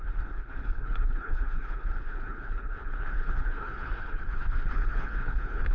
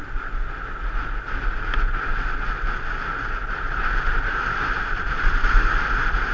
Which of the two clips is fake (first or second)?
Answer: first